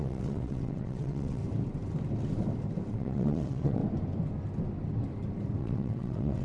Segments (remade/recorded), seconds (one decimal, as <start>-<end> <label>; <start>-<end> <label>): 0.0-1.4 remade; 1.4-2.9 recorded; 2.9-3.8 remade; 3.8-5.6 recorded; 5.6-6.4 remade